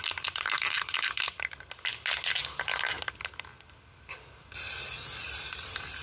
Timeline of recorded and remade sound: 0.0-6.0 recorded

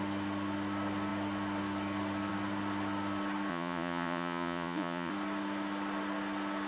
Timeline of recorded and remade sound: 0.0-3.5 recorded; 3.5-5.1 remade; 5.1-6.7 recorded

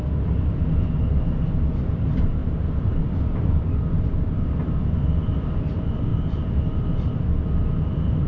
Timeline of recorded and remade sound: 0.0-2.4 recorded; 2.4-3.0 remade; 3.0-6.1 recorded; 6.1-6.6 remade; 6.6-8.3 recorded

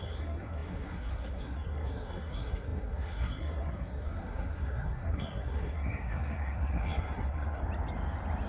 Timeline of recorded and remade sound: 0.0-7.6 remade; 7.6-8.5 recorded